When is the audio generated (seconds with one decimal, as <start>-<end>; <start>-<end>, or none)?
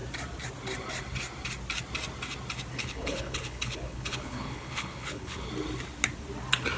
2.8-5.5